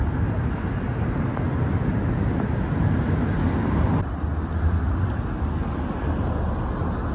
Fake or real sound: real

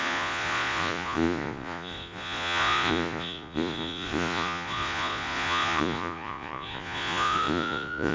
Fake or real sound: fake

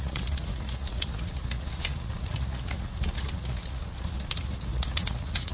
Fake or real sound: fake